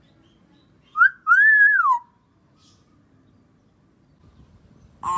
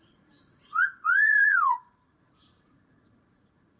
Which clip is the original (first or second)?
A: first